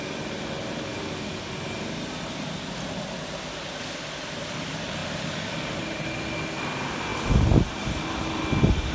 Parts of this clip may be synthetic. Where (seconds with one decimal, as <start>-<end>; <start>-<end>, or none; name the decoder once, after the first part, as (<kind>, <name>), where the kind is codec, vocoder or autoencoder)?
none